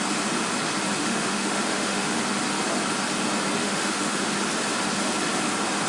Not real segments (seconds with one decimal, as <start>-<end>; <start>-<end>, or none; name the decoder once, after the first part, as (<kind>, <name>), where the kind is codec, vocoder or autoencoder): 1.0-2.2 (autoencoder, DAC-VAE); 3.6-4.3